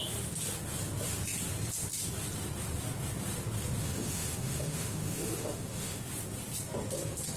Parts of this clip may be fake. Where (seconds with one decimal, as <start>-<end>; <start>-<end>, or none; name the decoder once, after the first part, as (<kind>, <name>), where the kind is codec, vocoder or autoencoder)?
3.8-6.0 (autoencoder, DAC-VAE)

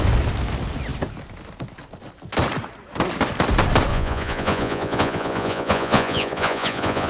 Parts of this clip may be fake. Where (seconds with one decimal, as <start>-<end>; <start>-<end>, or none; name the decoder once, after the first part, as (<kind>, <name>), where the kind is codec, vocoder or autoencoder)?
3.9-7.1 (vocoder, Vocos)

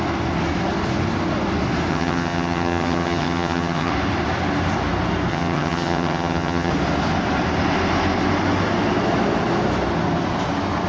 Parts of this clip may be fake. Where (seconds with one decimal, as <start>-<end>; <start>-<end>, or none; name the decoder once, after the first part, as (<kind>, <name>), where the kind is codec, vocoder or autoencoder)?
1.9-3.9 (vocoder, HiFi-GAN); 5.3-6.7

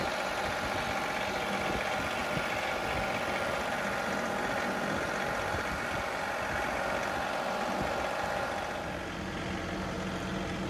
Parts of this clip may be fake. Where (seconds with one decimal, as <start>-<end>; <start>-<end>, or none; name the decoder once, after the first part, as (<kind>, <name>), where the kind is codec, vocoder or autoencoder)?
2.2-3.6 (vocoder, BigVGAN v2)

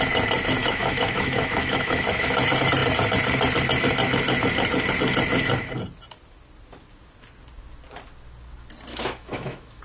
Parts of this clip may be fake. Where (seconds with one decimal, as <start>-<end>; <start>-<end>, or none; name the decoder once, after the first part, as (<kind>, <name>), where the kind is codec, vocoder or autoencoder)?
0.6-2.3 (autoencoder, DAC-VAE); 8.9-9.8

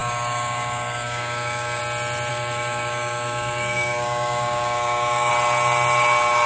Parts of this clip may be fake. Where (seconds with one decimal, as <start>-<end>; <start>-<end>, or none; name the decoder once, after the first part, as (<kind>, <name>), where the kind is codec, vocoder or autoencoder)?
0.0-1.8 (codec, DAC); 2.3-5.3

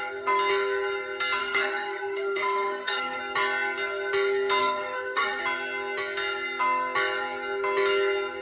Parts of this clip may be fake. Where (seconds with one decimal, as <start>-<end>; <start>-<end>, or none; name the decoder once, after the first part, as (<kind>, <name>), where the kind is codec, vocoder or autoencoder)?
1.4-3.2 (codec, SNAC); 4.6-5.4